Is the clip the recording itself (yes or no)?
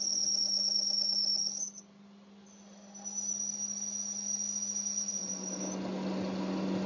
yes